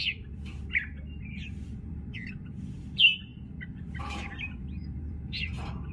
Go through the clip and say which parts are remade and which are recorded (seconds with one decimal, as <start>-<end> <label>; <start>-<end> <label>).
0.0-5.9 remade